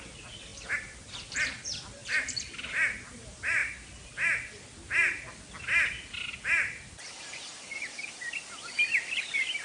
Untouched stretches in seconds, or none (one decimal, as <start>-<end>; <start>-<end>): 3.6-7.2